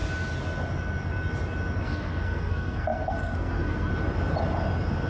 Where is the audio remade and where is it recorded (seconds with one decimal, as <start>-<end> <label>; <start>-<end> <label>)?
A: 0.0-1.8 recorded; 1.8-3.9 remade; 3.9-5.1 recorded